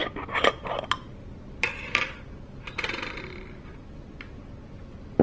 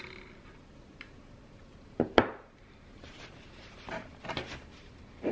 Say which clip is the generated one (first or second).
second